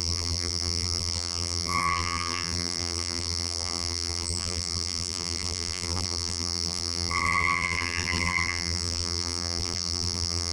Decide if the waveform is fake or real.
fake